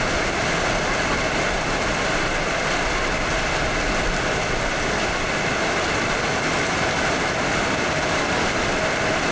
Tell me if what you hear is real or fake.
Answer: real